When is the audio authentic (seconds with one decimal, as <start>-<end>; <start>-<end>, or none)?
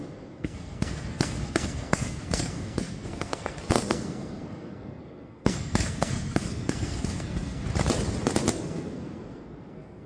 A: 7.6-8.5